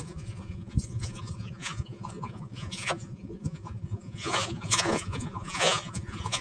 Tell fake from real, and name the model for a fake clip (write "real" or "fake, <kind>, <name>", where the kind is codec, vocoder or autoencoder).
fake, vocoder, Vocos